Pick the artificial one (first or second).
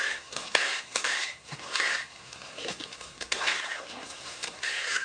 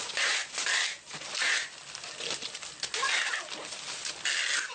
first